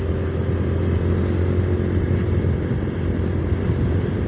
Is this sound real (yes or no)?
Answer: yes